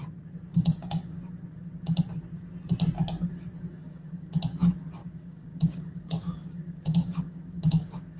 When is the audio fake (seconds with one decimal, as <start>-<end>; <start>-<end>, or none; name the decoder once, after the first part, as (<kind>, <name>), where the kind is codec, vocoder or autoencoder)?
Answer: 0.5-1.2 (codec, DAC); 3.7-4.3; 5.0-8.2